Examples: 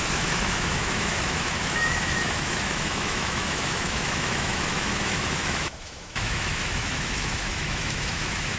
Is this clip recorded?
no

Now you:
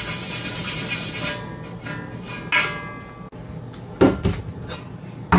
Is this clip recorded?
yes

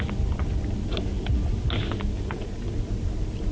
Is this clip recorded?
yes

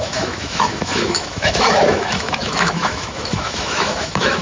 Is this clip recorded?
no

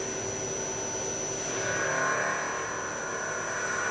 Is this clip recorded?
yes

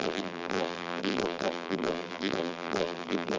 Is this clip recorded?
no